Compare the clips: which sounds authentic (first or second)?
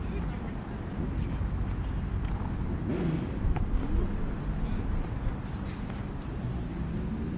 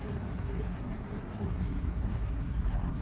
first